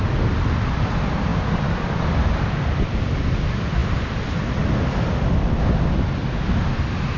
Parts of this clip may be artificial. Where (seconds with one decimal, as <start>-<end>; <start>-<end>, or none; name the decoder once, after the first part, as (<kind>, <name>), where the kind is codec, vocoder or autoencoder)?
0.0-3.8 (vocoder, BigVGAN v2); 6.7-7.2